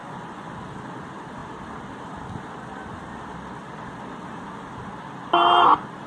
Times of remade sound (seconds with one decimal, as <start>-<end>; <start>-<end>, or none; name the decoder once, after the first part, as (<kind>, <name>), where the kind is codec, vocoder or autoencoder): 0.0-0.5 (vocoder, Vocos)

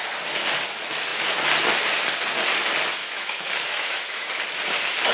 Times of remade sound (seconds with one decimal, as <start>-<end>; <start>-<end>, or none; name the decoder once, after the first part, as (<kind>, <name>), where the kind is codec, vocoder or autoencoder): 3.0-4.3 (autoencoder, DAC-VAE)